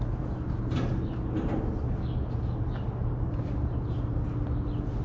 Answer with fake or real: real